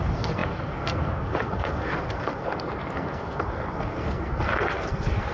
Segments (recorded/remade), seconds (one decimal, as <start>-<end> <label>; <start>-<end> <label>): 0.0-5.3 remade